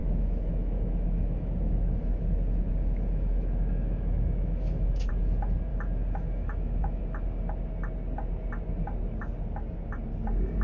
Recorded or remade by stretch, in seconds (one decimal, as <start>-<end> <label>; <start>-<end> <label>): 0.0-5.1 remade; 5.1-5.7 recorded; 5.7-7.0 remade; 7.0-10.6 recorded